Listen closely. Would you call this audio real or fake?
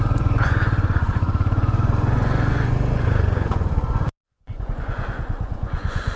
fake